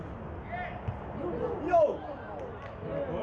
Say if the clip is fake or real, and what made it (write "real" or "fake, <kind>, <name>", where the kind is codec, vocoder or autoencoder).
real